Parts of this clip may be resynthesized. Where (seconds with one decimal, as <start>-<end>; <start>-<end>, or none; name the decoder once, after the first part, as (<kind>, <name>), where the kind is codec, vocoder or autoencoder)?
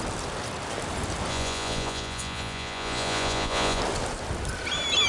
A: 1.3-3.8 (vocoder, Vocos)